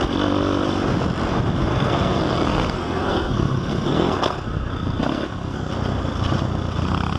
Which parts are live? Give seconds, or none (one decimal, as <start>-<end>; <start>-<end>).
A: 0.0-1.7; 5.7-7.2

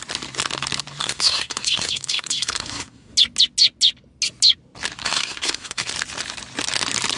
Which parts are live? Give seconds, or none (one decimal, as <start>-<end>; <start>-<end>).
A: 0.0-1.0; 3.1-5.0; 5.9-7.2

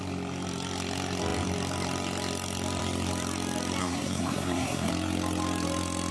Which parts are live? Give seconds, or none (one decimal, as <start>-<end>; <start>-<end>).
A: 0.0-3.8; 4.9-6.1